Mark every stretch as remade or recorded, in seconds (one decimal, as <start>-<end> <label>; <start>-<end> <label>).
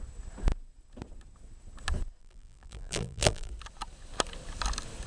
0.0-2.2 recorded; 2.2-3.5 remade; 3.5-5.1 recorded